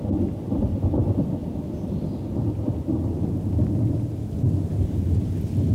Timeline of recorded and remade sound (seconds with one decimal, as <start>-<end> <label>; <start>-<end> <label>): 0.0-1.4 recorded; 1.4-2.8 remade; 2.8-5.7 recorded